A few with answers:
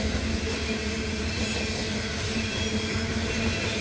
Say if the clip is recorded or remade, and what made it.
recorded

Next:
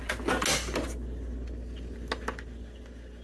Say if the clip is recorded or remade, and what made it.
recorded